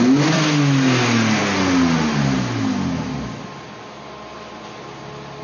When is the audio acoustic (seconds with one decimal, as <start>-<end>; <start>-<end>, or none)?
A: 0.0-5.4